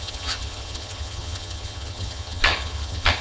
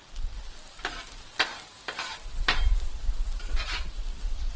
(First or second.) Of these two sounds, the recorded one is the second